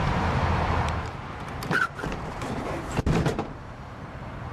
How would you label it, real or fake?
fake